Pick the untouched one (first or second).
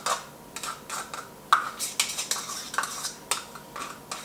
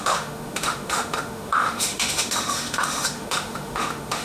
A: first